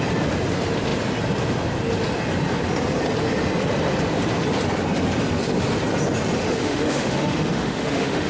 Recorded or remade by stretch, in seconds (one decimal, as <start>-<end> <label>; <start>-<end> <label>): 0.0-6.4 recorded; 6.4-8.3 remade